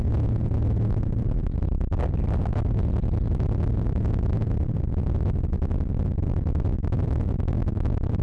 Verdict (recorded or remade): recorded